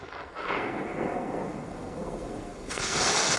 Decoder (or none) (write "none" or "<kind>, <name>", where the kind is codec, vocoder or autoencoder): codec, SNAC